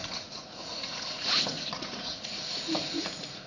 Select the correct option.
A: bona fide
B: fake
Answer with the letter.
B